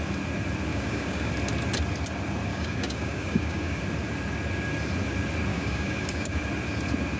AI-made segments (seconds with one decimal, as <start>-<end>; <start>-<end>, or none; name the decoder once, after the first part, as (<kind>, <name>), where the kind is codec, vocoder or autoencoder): 0.7-1.3 (codec, DAC); 2.5-3.8; 5.5-6.4